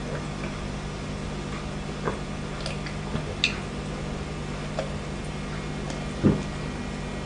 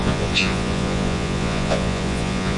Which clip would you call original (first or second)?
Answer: first